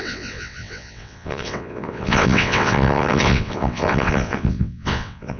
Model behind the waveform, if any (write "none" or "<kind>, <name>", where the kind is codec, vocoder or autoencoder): vocoder, WaveNeXt